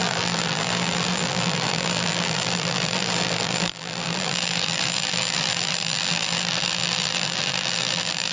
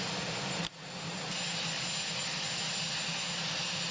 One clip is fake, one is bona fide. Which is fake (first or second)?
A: first